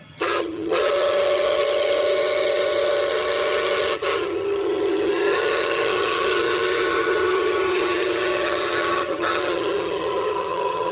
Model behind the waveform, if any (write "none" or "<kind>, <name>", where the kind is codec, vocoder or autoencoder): vocoder, HiFi-GAN